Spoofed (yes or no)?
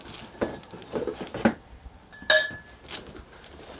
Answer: no